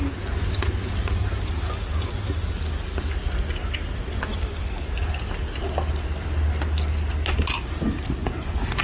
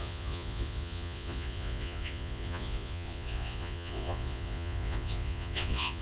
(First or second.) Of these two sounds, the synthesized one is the second